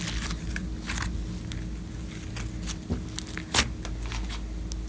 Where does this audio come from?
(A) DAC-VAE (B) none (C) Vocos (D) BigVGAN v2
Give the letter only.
B